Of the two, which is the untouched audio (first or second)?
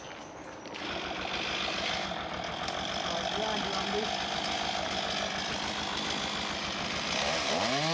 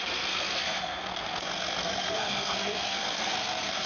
first